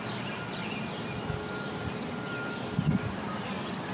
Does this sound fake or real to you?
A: real